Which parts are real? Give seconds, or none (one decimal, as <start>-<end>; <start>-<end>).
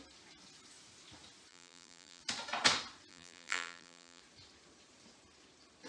0.0-1.5; 2.2-3.1; 4.2-5.9